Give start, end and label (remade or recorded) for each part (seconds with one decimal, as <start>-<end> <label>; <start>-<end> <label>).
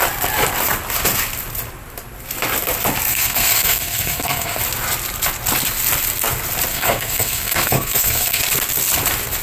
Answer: 0.0-3.1 recorded; 3.1-4.6 remade; 4.6-6.7 recorded; 6.7-8.4 remade; 8.4-9.4 recorded